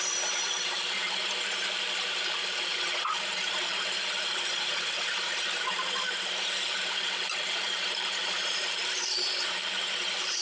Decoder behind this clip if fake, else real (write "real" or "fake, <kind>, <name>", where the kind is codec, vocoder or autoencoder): fake, vocoder, BigVGAN v2